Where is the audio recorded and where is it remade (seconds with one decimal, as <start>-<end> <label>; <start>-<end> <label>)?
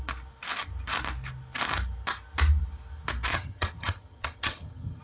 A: 0.0-3.3 recorded; 3.3-5.0 remade